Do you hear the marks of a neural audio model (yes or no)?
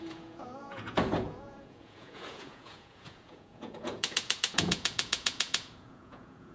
yes